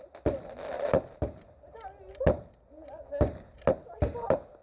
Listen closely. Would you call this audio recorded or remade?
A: recorded